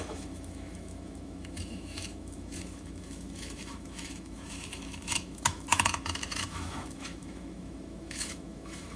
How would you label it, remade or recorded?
remade